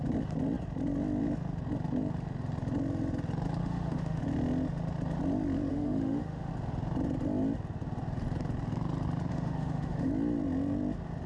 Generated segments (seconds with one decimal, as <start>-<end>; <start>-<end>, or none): 3.6-4.2; 5.7-6.5; 9.3-10.1